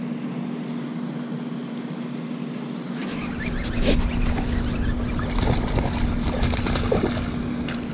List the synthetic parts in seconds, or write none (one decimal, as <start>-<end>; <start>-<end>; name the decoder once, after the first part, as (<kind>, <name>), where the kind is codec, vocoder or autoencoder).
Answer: none